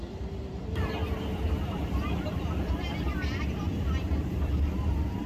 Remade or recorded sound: remade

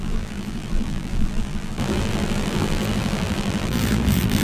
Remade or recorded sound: remade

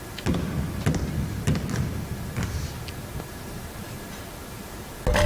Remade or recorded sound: recorded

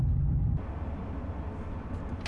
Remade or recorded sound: recorded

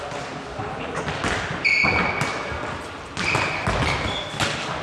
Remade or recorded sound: recorded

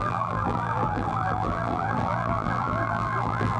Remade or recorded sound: remade